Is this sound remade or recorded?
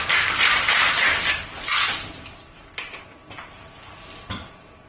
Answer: recorded